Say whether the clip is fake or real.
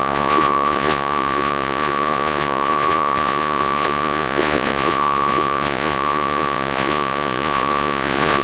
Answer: fake